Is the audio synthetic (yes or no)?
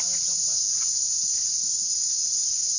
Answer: yes